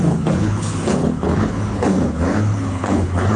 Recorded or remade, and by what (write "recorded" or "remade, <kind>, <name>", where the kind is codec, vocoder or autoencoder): remade, codec, HILCodec